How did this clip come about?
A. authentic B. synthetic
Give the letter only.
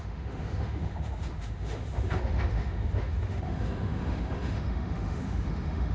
B